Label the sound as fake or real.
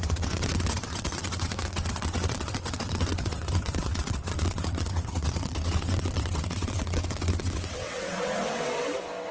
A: fake